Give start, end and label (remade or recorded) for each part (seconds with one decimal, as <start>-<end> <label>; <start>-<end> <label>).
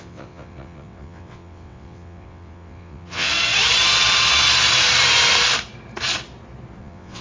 0.0-3.3 remade; 3.3-6.8 recorded; 6.8-7.2 remade